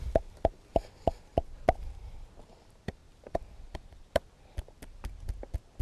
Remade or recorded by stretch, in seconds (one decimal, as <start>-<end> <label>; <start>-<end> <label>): 0.0-0.7 recorded; 0.7-1.3 remade; 1.3-3.0 recorded; 3.0-5.0 remade; 5.0-5.8 recorded